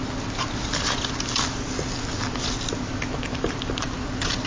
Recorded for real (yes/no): yes